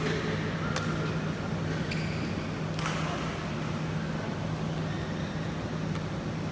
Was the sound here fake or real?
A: real